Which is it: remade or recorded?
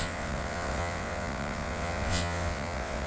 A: remade